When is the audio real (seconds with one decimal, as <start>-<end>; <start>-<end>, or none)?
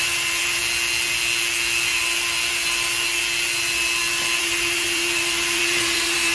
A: 0.6-4.4